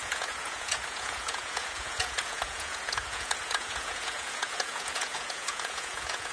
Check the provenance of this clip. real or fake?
fake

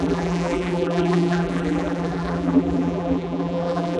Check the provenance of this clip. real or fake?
fake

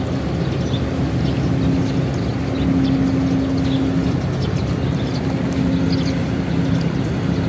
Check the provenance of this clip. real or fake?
real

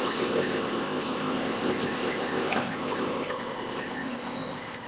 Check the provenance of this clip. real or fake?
fake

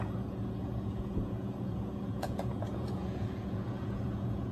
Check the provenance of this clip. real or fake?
fake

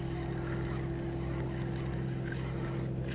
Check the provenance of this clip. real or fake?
real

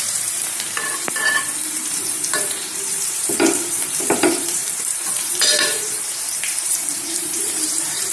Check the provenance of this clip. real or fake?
fake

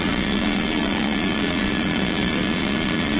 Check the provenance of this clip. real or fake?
fake